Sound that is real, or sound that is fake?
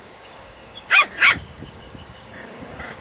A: fake